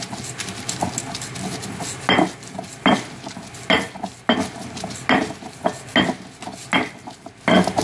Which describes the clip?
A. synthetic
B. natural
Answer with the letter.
B